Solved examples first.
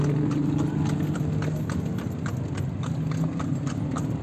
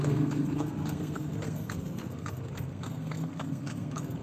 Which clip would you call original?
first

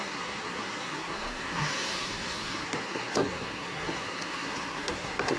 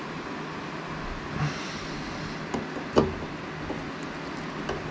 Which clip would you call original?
second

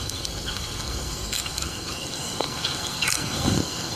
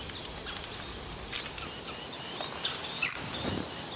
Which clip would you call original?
second